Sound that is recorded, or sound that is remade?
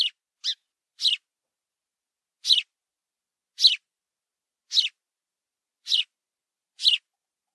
recorded